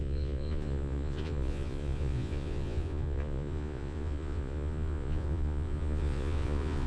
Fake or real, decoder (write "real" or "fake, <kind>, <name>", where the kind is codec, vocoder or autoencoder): fake, vocoder, Vocos